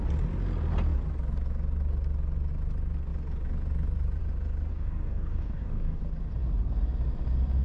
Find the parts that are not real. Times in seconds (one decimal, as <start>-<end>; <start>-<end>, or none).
4.7-6.0